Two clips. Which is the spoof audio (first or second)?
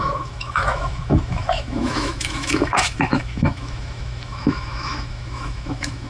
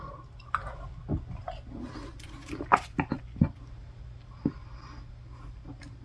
first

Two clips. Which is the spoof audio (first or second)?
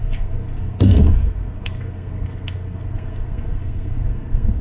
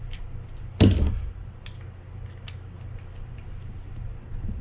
first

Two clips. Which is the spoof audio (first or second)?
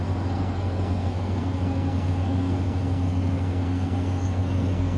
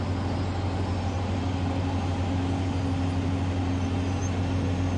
first